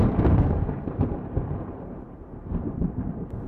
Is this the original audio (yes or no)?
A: no